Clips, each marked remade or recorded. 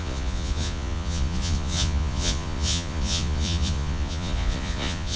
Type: remade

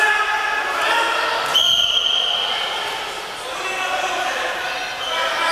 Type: recorded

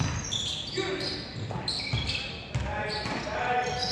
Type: recorded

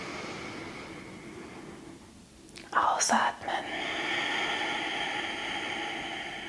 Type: recorded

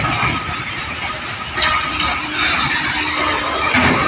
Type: recorded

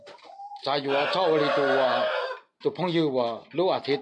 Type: recorded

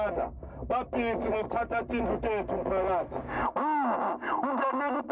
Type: recorded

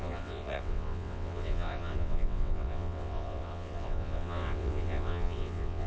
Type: remade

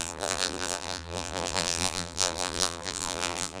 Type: remade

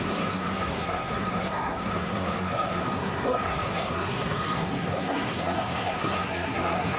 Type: remade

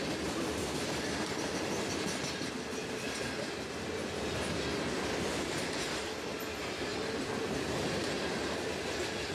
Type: recorded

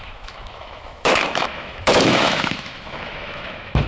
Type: remade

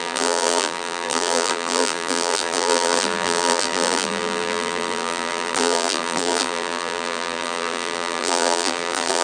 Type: remade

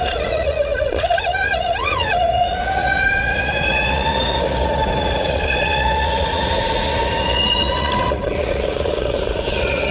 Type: remade